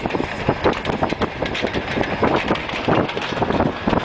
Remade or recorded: recorded